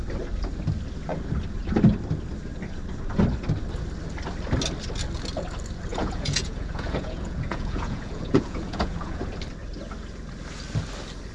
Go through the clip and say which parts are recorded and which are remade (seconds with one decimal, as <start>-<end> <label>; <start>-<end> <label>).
0.0-5.9 recorded; 5.9-9.2 remade; 9.2-11.3 recorded